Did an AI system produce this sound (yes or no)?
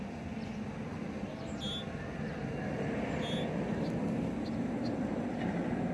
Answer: no